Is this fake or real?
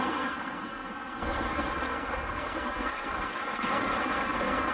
fake